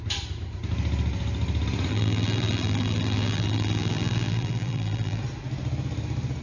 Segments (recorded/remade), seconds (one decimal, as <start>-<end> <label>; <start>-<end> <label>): 0.0-1.9 recorded; 1.9-5.2 remade; 5.2-6.4 recorded